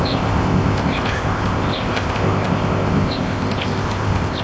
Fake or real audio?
fake